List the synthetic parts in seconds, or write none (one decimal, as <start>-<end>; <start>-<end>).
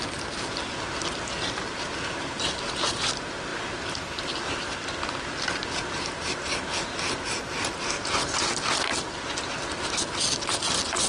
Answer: none